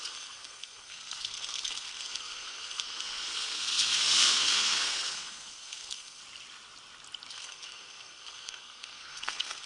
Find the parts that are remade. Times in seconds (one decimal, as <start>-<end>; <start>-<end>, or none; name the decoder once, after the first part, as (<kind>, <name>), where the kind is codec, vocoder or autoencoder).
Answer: 0.0-6.2 (codec, SNAC); 7.3-9.7